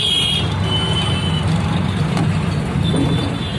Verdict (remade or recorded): recorded